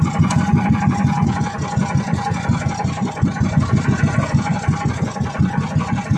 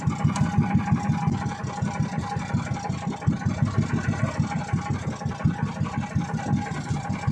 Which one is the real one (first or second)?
second